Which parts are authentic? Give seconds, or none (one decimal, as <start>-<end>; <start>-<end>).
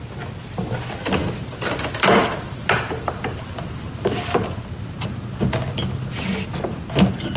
0.0-7.4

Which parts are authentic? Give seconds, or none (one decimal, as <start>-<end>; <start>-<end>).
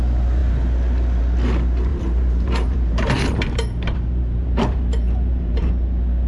0.0-1.9; 5.7-6.3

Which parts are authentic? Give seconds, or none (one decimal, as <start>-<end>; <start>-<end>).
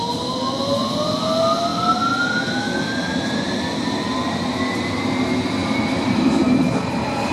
0.0-1.7; 5.0-5.6